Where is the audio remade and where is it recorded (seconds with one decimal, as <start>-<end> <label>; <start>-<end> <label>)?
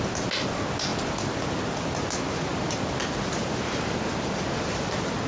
0.0-5.3 recorded